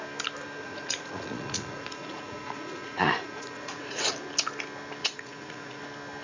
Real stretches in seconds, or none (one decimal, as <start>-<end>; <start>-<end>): 0.0-0.6; 4.1-5.0; 5.8-6.2

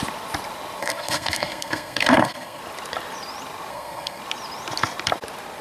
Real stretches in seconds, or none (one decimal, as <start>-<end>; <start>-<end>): 0.0-0.8; 2.6-3.7; 4.2-5.6

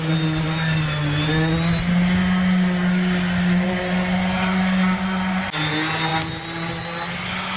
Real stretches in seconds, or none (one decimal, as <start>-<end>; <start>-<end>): 0.0-7.6

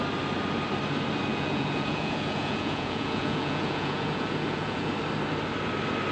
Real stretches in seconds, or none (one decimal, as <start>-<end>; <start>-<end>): 0.0-1.3; 4.9-6.1